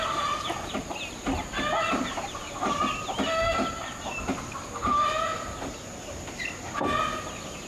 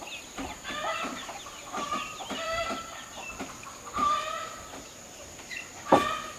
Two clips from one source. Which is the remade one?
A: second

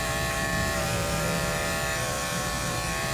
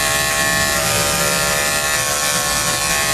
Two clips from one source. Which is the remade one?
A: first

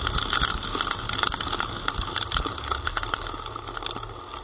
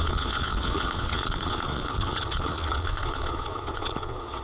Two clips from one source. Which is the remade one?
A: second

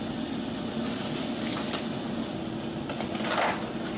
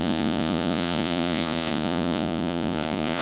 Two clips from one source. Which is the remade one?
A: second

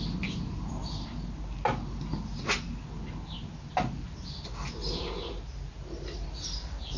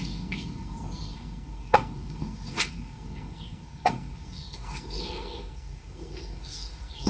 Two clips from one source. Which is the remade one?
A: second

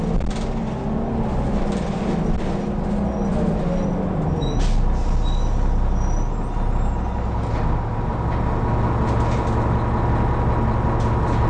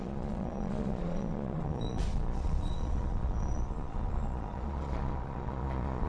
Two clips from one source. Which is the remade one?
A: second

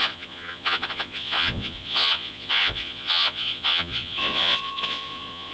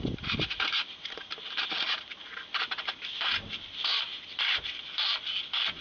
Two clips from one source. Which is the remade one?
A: first